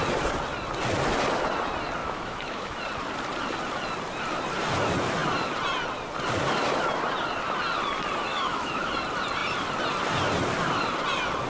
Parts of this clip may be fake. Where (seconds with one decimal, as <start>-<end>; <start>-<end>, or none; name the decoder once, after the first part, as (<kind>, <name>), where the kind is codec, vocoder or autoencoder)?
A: 2.0-2.8 (autoencoder, DAC-VAE); 8.3-8.9

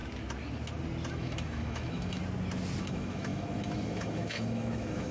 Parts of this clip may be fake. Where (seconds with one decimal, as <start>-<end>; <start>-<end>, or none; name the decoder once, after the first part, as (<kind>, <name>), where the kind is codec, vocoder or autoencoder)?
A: 1.1-2.2 (autoencoder, DAC-VAE); 2.8-5.1

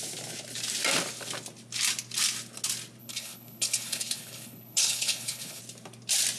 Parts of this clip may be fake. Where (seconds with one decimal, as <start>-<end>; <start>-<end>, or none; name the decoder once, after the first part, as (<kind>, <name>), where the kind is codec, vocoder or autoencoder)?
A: 3.0-5.6 (codec, HILCodec)

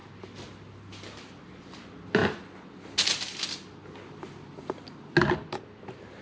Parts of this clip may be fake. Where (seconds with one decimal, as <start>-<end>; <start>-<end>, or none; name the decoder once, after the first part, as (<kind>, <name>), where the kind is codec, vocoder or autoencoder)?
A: none

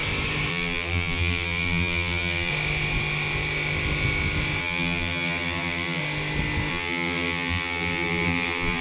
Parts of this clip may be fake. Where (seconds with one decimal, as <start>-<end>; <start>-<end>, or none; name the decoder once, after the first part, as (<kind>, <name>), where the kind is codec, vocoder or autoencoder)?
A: 0.5-2.5 (vocoder, BigVGAN v2); 4.6-6.0; 6.7-8.8

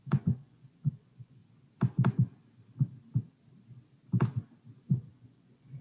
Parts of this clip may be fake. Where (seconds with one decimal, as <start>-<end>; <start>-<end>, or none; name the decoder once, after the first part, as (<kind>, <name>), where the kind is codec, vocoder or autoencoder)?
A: 0.0-1.4 (vocoder, Vocos); 4.9-5.8

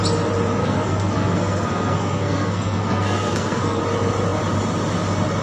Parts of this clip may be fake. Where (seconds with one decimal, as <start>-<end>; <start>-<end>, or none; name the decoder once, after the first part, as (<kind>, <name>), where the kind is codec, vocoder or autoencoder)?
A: 0.6-3.8 (codec, SNAC)

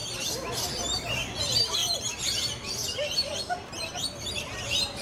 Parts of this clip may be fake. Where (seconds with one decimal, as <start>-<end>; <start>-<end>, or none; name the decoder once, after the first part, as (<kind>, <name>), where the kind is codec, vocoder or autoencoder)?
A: 0.7-5.0 (vocoder, BigVGAN v2)